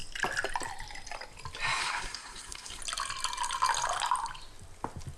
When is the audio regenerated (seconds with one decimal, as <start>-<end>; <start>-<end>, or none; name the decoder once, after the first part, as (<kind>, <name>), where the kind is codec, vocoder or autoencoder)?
1.8-2.8 (codec, SNAC)